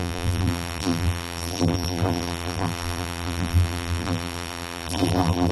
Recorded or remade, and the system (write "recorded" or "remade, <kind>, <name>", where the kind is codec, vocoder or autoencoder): remade, vocoder, BigVGAN v2